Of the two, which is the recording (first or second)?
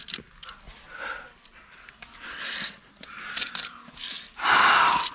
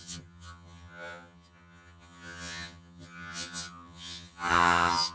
first